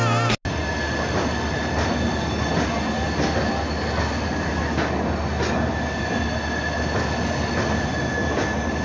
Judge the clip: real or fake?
real